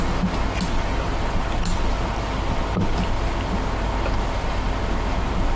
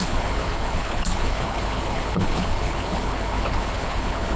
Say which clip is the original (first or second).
first